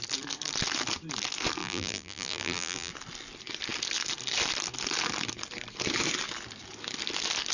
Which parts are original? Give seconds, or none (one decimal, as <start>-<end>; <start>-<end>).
0.0-1.6; 2.9-7.5